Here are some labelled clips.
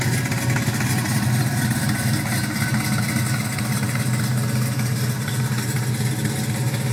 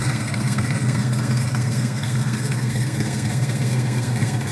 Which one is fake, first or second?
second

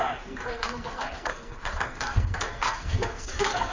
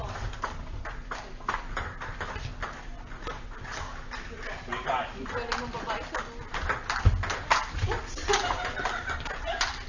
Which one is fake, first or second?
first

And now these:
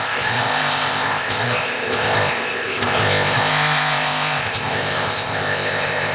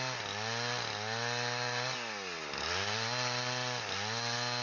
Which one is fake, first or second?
first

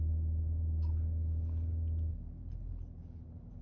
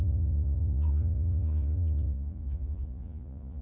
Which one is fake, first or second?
second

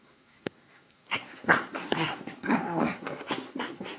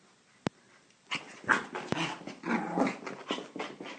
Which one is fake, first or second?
first